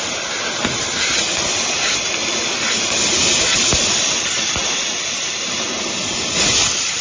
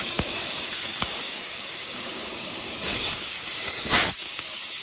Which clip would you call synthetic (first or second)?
second